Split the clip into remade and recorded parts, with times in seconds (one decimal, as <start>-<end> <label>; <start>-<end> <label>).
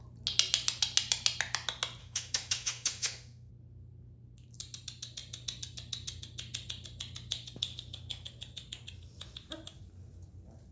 0.0-2.0 recorded; 2.0-3.5 remade; 3.5-10.7 recorded